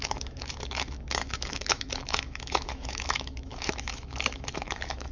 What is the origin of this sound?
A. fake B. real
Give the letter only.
A